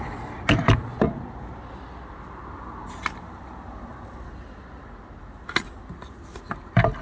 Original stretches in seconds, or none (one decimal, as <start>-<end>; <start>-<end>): 0.0-7.0

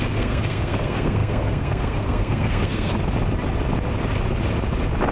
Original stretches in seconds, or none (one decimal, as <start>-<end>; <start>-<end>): 2.9-5.1

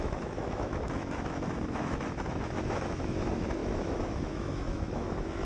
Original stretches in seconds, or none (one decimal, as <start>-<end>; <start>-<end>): none

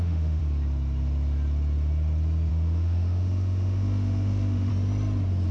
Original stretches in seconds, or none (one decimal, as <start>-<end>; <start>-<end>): 0.4-2.5; 4.7-5.5

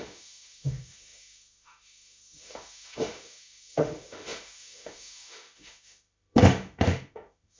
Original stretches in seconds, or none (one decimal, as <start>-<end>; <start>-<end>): none

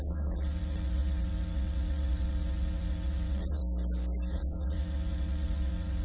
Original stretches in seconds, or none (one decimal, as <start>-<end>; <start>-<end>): 3.6-4.3

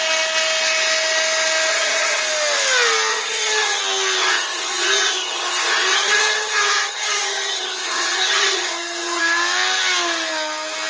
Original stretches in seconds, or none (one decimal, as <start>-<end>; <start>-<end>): 0.0-1.7; 2.2-3.1; 3.8-4.2; 9.2-10.9

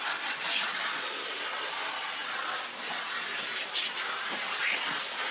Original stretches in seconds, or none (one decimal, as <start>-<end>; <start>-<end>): 0.0-5.3